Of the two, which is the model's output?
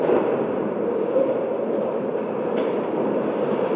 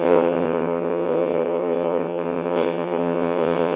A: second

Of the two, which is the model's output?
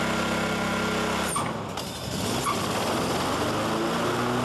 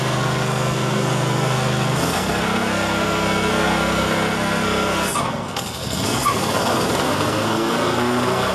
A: second